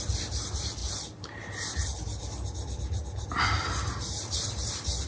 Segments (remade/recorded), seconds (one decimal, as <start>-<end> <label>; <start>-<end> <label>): 0.0-5.1 remade